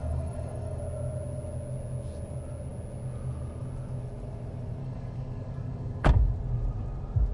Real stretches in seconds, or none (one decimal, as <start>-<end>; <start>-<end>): 0.8-4.8; 6.3-7.3